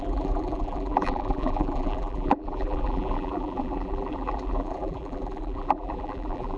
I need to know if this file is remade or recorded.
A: remade